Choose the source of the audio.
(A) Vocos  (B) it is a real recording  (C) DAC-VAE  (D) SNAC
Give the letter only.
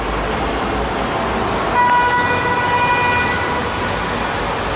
B